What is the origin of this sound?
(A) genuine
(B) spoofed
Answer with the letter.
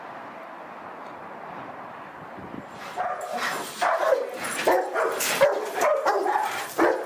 A